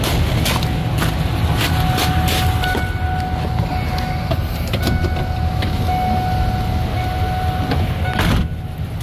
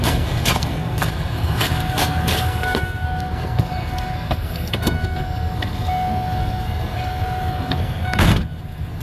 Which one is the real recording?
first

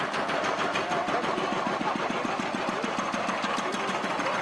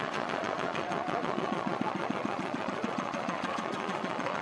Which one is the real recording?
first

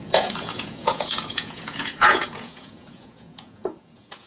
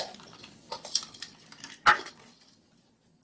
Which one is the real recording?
second